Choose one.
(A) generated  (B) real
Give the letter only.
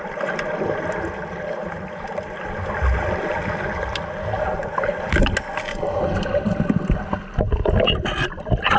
B